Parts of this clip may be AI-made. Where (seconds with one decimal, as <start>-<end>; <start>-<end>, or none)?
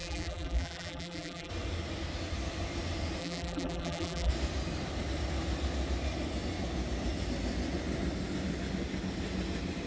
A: 0.0-1.5; 3.2-4.3